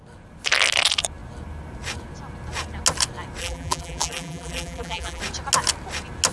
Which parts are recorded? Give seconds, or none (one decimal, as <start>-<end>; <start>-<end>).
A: 0.0-3.4; 5.2-6.3